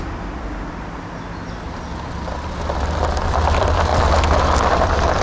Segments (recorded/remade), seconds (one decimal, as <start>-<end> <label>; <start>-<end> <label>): 0.0-3.9 remade; 3.9-4.6 recorded; 4.6-5.2 remade